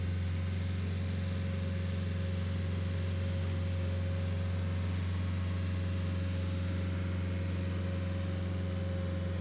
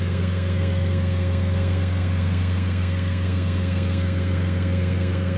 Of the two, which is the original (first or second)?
first